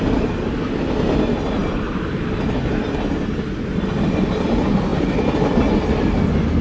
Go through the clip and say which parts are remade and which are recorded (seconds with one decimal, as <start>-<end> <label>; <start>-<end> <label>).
0.0-1.6 recorded; 1.6-3.9 remade; 3.9-4.9 recorded; 4.9-5.8 remade; 5.8-6.6 recorded